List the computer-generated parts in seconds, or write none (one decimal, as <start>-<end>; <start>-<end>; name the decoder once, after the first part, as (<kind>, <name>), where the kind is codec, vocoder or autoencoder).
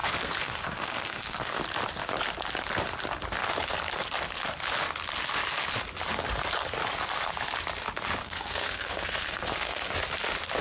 0.0-1.6 (codec, SNAC); 8.2-9.9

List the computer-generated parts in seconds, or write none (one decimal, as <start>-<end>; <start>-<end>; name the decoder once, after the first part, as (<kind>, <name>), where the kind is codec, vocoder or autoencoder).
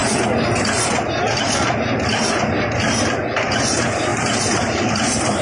4.1-4.9 (vocoder, BigVGAN v2)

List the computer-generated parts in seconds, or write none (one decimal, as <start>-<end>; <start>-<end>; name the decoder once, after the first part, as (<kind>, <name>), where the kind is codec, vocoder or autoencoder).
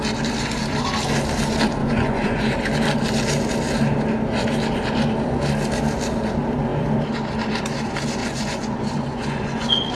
1.8-2.5 (vocoder, Vocos); 8.2-9.9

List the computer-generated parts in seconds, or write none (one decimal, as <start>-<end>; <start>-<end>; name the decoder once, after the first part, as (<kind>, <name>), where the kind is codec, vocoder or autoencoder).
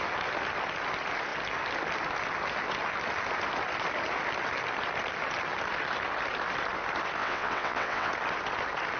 7.2-8.1 (vocoder, WaveNeXt)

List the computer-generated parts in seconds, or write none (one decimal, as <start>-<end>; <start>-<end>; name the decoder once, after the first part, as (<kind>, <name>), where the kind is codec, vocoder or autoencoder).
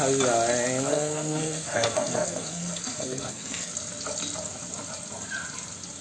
0.9-3.7 (codec, SNAC)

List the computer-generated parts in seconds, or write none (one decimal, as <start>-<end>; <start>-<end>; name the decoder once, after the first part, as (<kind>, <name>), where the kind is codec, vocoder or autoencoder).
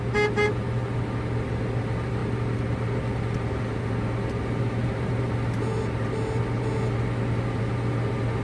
none